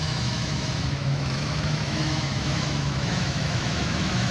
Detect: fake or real fake